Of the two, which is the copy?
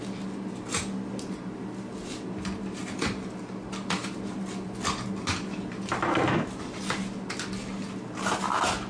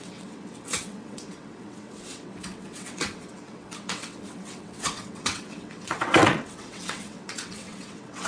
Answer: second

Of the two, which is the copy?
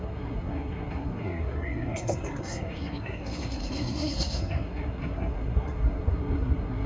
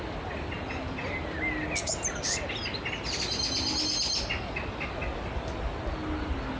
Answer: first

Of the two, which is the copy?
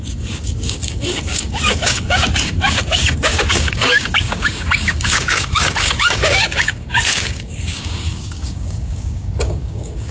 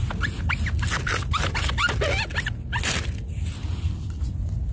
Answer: first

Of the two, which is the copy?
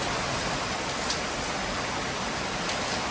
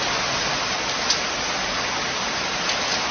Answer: first